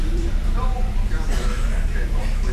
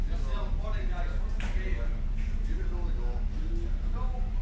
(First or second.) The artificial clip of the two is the first